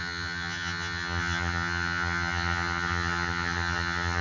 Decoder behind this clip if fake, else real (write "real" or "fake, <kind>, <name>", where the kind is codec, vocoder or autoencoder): fake, vocoder, HiFi-GAN